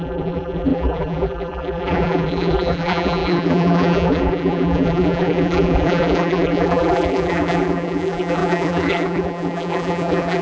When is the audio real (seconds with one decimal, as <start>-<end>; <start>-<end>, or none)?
none